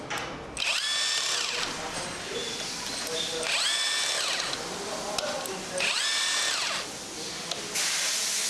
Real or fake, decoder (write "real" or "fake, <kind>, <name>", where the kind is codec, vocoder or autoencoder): real